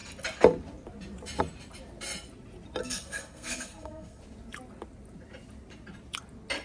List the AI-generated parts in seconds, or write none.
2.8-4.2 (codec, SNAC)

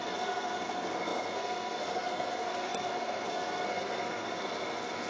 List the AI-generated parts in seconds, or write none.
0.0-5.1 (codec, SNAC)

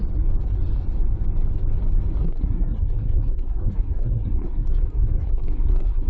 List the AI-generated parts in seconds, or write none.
2.2-6.1 (codec, SNAC)